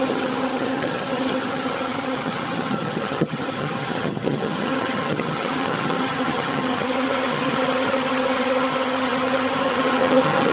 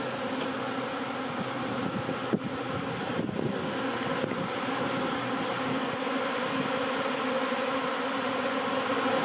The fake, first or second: first